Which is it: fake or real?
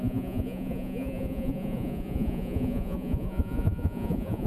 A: fake